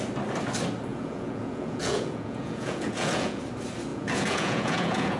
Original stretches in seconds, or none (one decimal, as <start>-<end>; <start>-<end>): 0.0-0.9; 3.4-3.9